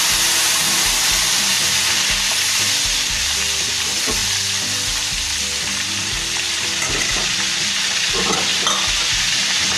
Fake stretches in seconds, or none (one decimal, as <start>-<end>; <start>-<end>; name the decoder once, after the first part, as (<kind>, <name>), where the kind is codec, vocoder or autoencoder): 0.0-4.2 (vocoder, BigVGAN v2); 7.0-8.5; 9.2-9.8